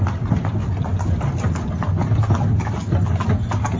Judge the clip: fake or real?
real